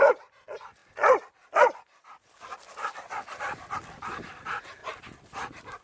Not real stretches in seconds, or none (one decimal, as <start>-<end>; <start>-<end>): 0.0-0.8; 3.3-4.8